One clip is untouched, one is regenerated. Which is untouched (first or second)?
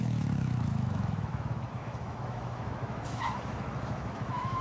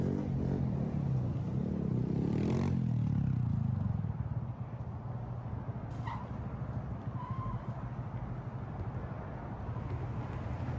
second